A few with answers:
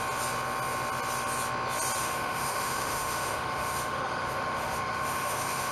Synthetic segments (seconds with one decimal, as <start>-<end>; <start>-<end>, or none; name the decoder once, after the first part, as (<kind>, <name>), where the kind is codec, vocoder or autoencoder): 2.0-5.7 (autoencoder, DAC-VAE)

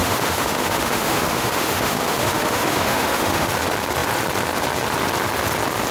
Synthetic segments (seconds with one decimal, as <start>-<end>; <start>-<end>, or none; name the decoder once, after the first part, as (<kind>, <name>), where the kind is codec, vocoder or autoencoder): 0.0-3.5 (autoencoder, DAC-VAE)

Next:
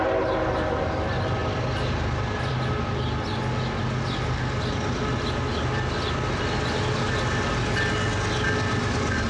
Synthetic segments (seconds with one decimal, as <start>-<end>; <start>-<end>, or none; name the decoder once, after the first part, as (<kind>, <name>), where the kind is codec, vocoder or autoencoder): none

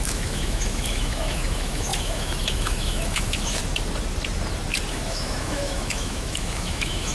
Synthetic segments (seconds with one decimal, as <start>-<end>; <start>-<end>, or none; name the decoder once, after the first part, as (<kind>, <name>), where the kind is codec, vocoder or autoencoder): 0.0-3.6 (autoencoder, DAC-VAE); 4.9-7.1

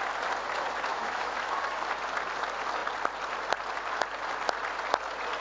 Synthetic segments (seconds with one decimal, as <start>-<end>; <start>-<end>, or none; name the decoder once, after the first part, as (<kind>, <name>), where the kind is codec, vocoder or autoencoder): 0.9-1.6 (autoencoder, DAC-VAE)

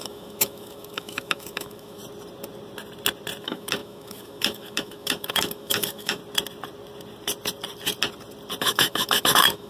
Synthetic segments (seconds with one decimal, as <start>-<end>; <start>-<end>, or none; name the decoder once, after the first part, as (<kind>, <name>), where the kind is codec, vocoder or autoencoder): 0.0-2.0 (autoencoder, DAC-VAE); 3.4-6.2; 8.6-9.7